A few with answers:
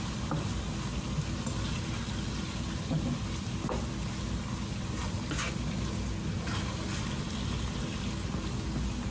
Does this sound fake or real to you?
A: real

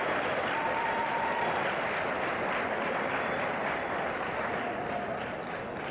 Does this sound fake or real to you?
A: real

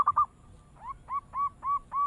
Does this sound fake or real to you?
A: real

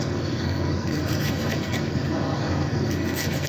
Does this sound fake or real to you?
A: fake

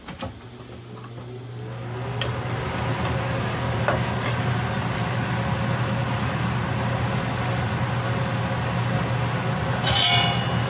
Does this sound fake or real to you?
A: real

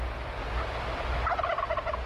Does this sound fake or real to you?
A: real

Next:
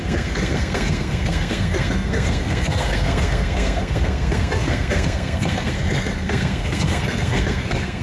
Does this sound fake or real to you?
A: fake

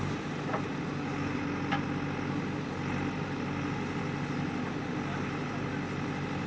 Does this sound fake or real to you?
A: real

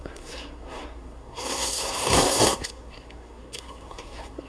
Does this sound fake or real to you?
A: fake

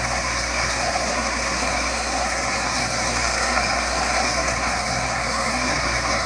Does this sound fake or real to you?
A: fake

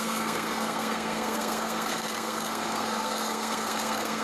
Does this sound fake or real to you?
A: fake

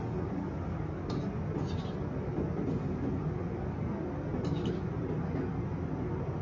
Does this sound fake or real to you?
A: real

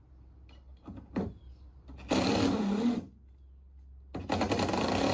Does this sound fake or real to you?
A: real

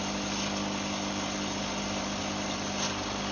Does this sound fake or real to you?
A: real